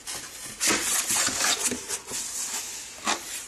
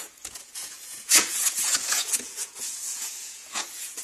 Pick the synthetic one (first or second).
second